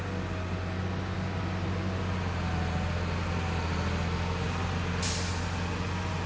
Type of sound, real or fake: real